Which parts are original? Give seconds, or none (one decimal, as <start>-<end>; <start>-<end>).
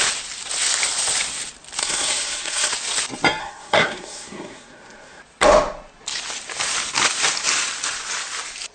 0.0-1.8; 2.7-3.4; 5.2-8.7